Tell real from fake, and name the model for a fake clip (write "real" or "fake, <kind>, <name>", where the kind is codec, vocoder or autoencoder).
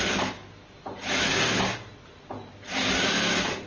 real